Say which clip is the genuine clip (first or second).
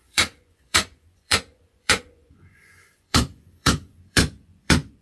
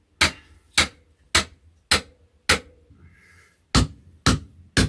second